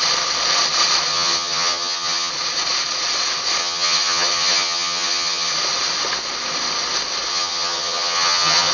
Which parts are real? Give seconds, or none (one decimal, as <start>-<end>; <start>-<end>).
0.0-1.1; 2.3-3.6; 5.5-7.3